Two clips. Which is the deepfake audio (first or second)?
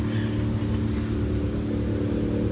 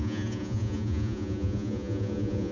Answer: second